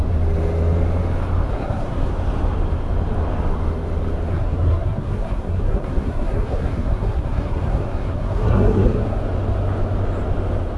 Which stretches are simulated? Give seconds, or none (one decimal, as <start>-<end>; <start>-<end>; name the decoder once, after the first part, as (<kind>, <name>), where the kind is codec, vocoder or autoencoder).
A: 1.5-2.1 (codec, SNAC); 4.3-9.2